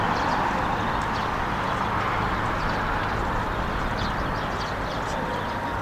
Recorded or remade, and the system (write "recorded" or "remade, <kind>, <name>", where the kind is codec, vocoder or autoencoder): recorded